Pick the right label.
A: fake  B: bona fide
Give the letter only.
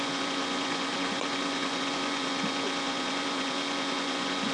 A